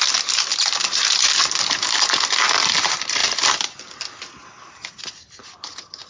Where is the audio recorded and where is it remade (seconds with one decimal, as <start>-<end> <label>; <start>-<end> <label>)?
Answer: 0.0-6.1 recorded